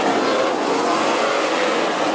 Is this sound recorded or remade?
remade